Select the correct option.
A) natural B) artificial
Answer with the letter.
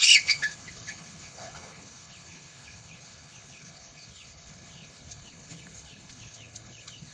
B